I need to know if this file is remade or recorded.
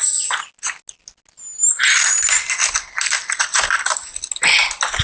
recorded